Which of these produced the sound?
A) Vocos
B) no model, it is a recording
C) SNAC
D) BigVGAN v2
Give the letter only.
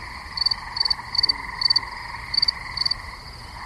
B